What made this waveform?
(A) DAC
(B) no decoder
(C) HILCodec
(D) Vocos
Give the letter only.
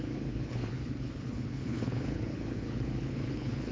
C